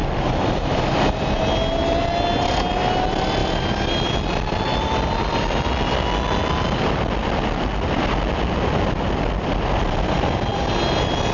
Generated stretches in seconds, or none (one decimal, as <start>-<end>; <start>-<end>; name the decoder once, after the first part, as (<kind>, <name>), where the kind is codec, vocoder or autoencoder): 0.0-1.4 (vocoder, BigVGAN v2); 3.4-5.6